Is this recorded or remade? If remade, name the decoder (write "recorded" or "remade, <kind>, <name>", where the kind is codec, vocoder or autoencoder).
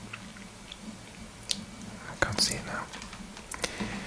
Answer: recorded